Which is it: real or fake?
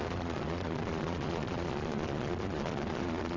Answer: fake